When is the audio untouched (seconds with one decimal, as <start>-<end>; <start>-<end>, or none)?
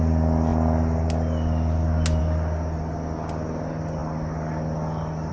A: 0.0-5.3